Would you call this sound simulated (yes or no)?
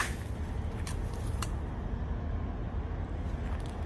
no